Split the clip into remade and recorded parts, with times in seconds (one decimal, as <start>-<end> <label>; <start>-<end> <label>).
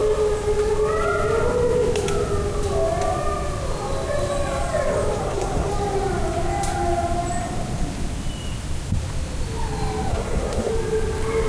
0.0-5.2 recorded; 5.2-5.7 remade; 5.7-10.1 recorded; 10.1-10.7 remade; 10.7-11.5 recorded